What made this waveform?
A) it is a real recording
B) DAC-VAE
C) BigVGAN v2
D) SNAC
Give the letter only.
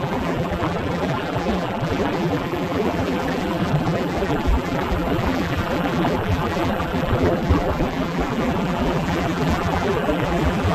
C